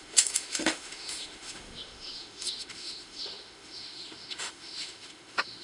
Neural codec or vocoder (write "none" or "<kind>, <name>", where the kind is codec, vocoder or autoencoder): autoencoder, DAC-VAE